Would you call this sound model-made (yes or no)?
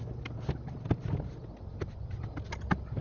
no